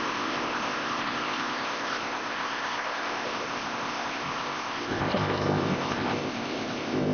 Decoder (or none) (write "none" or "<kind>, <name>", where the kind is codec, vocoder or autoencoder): codec, ZipCodec